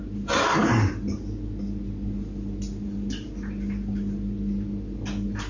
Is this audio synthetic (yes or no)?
no